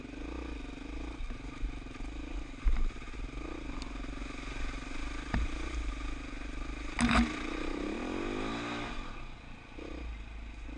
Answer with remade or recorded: recorded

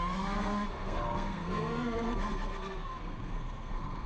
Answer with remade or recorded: remade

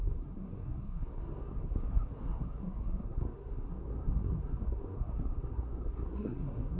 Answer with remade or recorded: remade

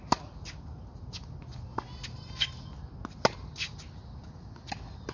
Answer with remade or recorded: recorded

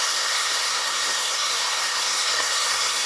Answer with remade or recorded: remade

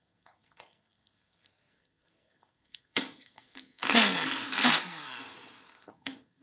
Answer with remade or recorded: remade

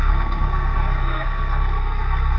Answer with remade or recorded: remade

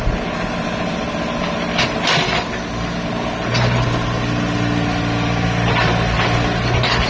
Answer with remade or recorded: recorded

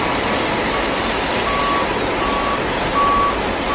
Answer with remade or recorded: recorded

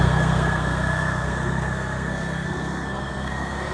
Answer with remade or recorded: remade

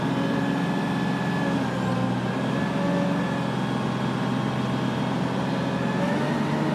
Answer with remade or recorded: recorded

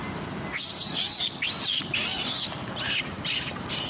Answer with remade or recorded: recorded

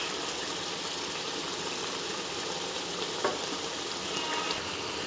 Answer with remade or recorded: recorded